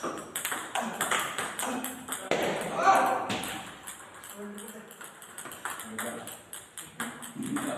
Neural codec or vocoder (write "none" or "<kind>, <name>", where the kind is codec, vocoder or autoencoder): none